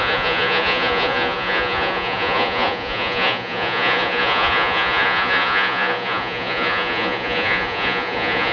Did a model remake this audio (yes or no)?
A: yes